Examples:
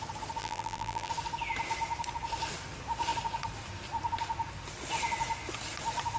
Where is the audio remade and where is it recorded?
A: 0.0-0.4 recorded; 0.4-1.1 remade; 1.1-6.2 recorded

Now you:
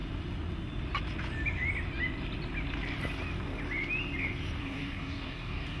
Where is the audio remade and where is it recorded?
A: 0.0-4.6 recorded; 4.6-5.8 remade